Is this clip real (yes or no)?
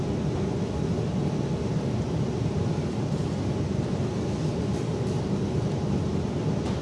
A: yes